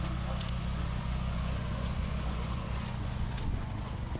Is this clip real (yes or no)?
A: no